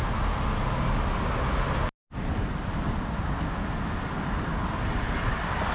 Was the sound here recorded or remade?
recorded